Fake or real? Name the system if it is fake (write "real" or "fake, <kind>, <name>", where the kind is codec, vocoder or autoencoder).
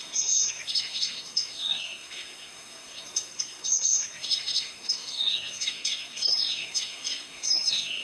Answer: fake, codec, SNAC